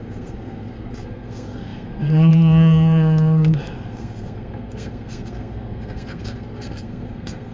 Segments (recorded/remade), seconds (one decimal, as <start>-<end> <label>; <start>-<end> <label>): 0.0-7.5 remade